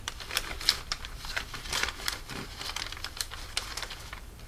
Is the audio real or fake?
fake